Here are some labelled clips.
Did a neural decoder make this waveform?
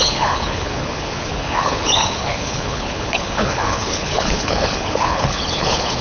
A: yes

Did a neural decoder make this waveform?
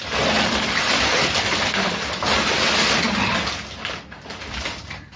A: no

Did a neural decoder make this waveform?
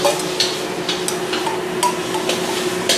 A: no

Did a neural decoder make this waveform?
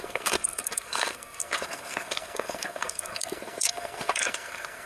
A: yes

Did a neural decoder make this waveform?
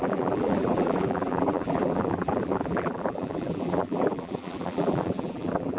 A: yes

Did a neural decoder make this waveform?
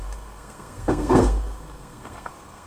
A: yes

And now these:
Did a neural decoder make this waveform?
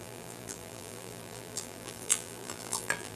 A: yes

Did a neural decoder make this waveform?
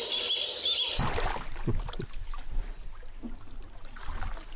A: no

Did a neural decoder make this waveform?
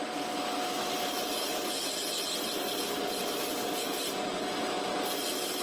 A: no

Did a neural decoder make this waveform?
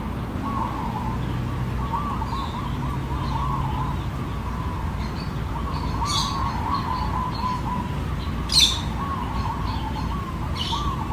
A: no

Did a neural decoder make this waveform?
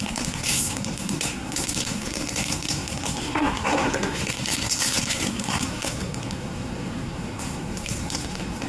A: yes